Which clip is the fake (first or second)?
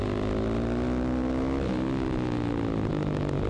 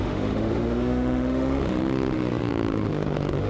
second